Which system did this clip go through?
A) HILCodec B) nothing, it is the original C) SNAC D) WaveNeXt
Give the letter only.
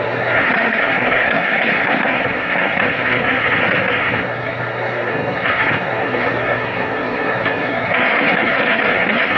C